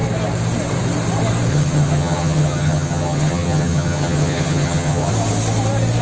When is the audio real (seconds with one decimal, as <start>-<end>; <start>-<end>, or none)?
0.0-1.5; 5.1-6.0